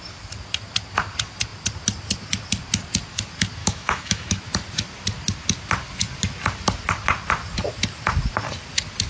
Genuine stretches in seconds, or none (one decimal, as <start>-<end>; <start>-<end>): 0.0-3.6; 4.3-9.1